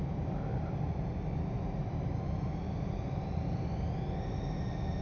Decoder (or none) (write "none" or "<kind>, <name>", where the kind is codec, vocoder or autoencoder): none